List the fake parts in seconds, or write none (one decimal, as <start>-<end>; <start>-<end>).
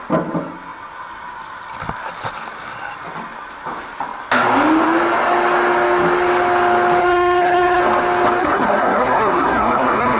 7.0-7.8; 8.4-10.2